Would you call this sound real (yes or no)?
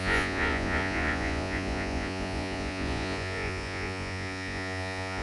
no